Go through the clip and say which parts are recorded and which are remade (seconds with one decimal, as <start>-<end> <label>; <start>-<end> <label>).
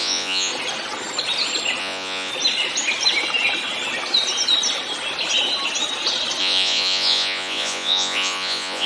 0.0-0.5 remade; 0.5-1.8 recorded; 1.8-2.3 remade; 2.3-6.4 recorded; 6.4-8.9 remade